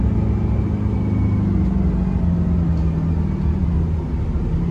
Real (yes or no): yes